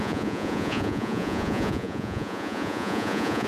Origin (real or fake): fake